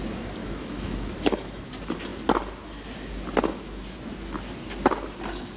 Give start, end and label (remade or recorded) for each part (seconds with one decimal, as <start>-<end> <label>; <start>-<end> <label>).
0.0-0.4 recorded; 0.4-1.7 remade; 1.7-5.6 recorded